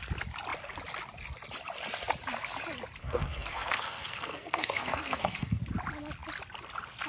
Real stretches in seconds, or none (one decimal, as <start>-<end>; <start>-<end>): 0.0-3.0; 5.6-7.1